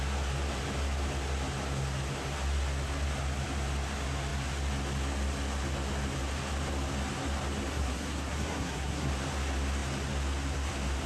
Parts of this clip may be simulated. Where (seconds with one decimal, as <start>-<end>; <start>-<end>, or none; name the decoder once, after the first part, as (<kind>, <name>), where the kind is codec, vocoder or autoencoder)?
7.7-9.1 (codec, SNAC)